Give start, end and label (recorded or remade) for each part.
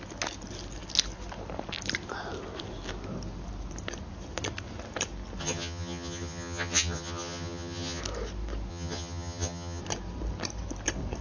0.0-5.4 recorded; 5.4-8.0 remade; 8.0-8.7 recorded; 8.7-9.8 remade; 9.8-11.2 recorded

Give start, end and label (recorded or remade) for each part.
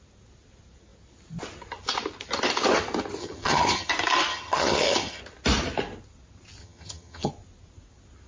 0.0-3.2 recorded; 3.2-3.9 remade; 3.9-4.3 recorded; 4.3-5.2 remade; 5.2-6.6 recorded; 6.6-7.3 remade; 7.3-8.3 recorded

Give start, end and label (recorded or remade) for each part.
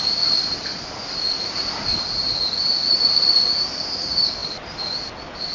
0.0-5.5 recorded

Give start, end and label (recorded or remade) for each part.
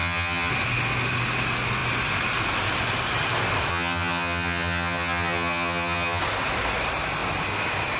0.0-0.5 remade; 0.5-3.7 recorded; 3.7-6.2 remade; 6.2-8.0 recorded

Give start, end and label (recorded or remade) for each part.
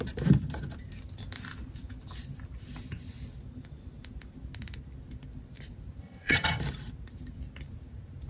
0.0-6.0 recorded; 6.0-6.6 remade; 6.6-8.3 recorded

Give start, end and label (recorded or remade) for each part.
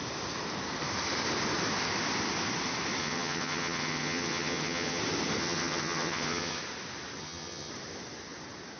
0.0-3.0 recorded; 3.0-5.0 remade; 5.0-5.4 recorded; 5.4-6.6 remade; 6.6-7.2 recorded; 7.2-7.7 remade; 7.7-8.8 recorded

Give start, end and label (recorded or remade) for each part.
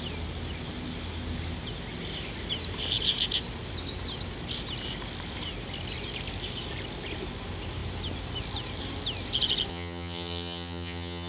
0.0-9.7 recorded; 9.7-11.3 remade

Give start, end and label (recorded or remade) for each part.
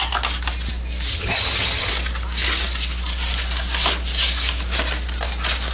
0.0-1.1 recorded; 1.1-1.9 remade; 1.9-5.7 recorded